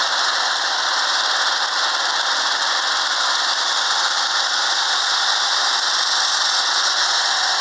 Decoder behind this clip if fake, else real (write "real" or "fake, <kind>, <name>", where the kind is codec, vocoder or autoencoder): real